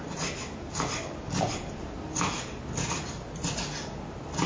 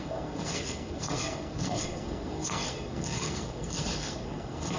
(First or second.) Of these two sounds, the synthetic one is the second